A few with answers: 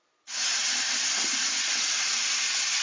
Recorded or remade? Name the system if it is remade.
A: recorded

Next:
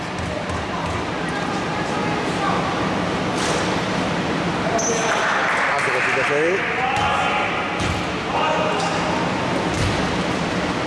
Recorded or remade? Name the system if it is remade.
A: recorded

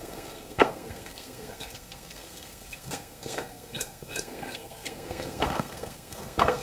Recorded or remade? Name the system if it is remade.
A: remade, codec, SNAC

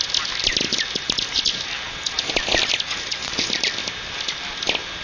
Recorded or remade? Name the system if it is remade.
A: recorded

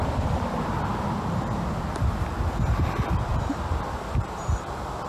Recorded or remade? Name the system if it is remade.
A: remade, vocoder, BigVGAN v2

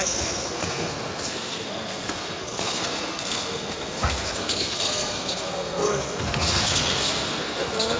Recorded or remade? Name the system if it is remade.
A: remade, codec, SNAC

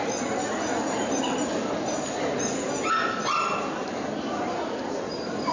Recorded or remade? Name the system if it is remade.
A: recorded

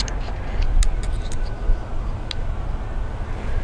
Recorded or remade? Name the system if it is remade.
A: recorded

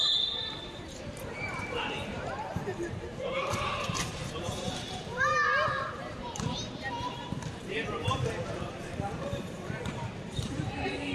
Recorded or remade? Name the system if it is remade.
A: remade, vocoder, BigVGAN v2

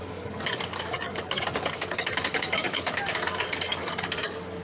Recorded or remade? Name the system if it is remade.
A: remade, codec, DAC